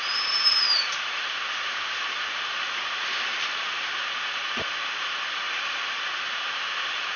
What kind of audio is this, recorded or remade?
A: remade